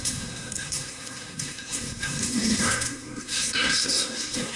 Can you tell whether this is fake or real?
fake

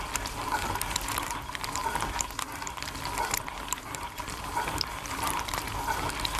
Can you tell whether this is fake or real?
real